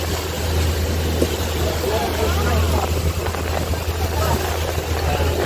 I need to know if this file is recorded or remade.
recorded